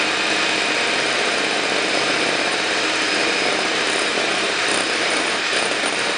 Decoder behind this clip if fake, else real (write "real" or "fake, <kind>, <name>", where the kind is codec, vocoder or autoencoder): fake, vocoder, BigVGAN v2